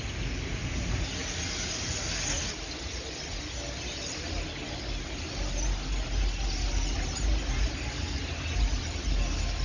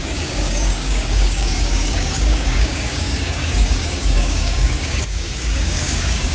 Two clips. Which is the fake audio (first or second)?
second